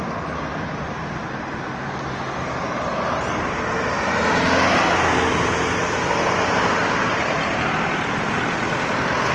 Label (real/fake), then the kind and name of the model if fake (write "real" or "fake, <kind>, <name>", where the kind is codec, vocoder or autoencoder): real